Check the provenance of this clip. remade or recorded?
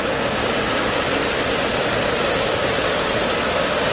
recorded